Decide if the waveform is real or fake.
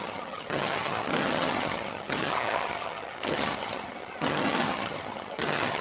fake